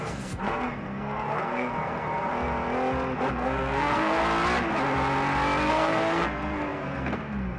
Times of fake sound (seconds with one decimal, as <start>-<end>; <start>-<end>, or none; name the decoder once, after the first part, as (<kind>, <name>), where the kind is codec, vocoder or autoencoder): 0.0-2.3 (codec, SNAC); 3.3-4.2; 5.7-7.6